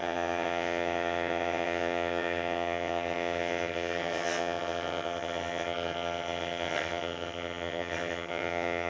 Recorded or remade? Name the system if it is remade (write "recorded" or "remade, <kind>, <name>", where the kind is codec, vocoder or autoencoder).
remade, vocoder, HiFi-GAN